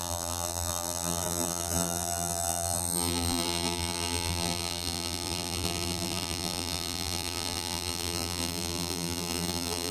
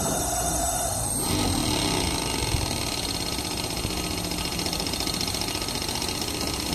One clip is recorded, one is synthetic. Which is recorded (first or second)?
second